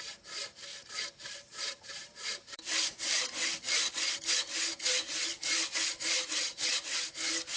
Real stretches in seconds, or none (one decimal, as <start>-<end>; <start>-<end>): 0.0-0.7; 4.3-5.3; 7.1-7.6